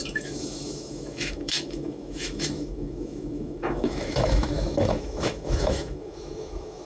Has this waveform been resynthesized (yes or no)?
yes